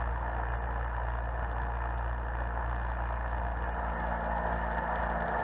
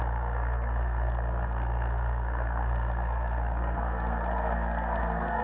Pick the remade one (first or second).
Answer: second